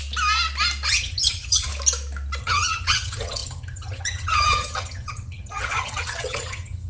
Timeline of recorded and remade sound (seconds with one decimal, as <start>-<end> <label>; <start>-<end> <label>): 0.0-0.9 recorded; 0.9-1.7 remade; 1.7-2.4 recorded; 2.4-6.9 remade